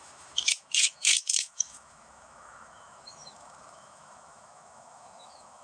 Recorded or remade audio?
remade